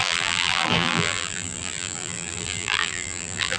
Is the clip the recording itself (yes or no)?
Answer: no